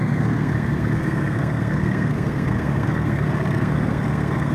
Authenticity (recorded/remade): remade